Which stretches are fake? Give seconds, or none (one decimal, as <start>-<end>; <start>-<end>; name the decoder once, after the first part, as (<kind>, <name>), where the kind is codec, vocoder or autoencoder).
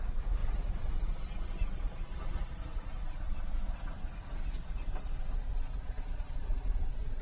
none